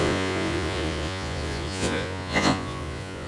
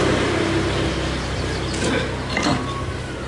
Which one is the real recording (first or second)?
second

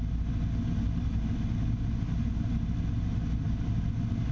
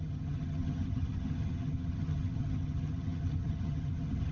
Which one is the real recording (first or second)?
first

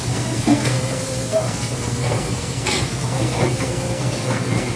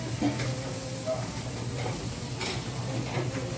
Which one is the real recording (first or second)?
second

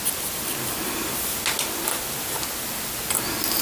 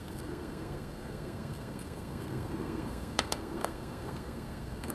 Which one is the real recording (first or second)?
first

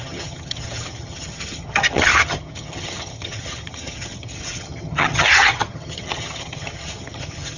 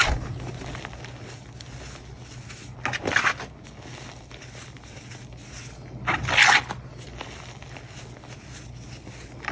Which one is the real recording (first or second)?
second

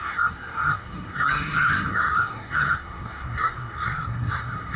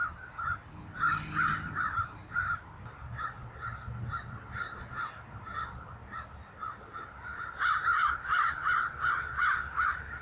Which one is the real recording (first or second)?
second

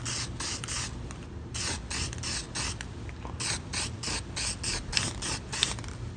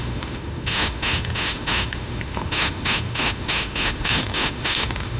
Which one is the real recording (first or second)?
first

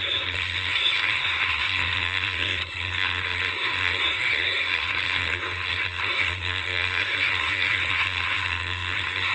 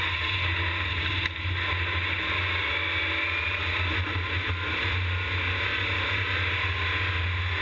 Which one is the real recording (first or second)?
second